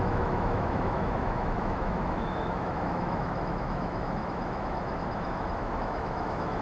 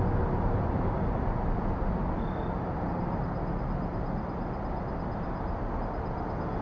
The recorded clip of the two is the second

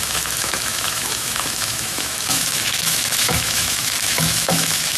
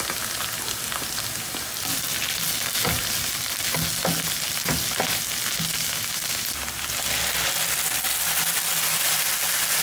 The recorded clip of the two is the second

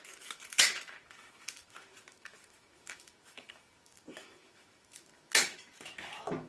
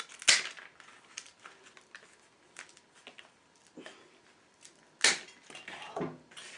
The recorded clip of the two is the second